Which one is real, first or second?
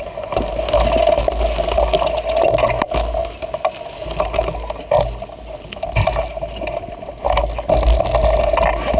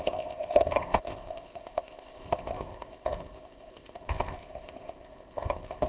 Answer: first